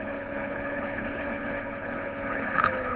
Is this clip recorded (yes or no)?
no